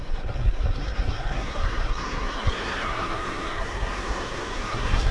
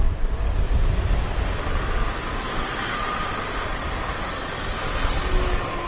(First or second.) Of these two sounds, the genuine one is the second